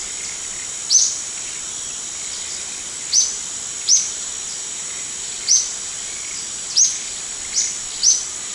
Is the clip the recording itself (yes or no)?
yes